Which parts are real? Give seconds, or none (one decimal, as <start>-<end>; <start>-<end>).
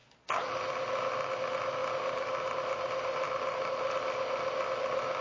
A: 0.0-5.2